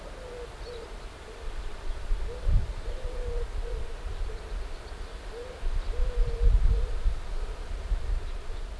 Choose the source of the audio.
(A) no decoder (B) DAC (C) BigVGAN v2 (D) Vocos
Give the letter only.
A